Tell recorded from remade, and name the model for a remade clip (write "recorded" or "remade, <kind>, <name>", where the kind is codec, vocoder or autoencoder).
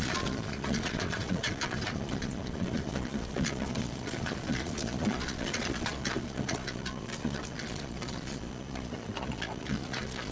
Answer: remade, vocoder, Vocos